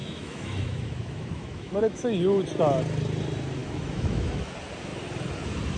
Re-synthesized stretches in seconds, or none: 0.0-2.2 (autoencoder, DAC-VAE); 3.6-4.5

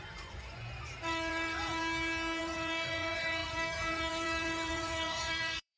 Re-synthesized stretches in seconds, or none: 0.0-1.8 (vocoder, Vocos); 2.4-5.8

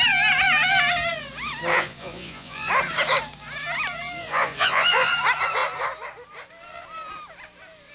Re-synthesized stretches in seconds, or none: 1.7-2.7 (vocoder, Vocos); 4.2-5.1

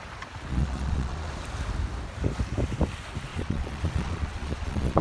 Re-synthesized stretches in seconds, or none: 0.5-1.3 (vocoder, Vocos); 3.3-5.0

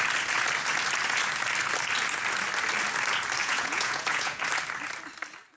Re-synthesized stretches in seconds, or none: 3.4-4.4 (vocoder, Vocos)